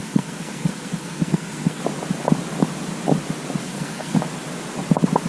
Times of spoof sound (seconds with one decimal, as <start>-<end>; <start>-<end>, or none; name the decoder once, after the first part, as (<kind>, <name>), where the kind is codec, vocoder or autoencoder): 0.0-1.8 (codec, SNAC); 3.6-4.2